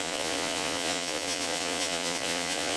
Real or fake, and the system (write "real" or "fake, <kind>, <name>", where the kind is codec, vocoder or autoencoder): fake, vocoder, Vocos